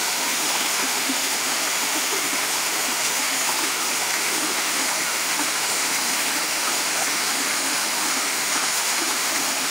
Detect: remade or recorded remade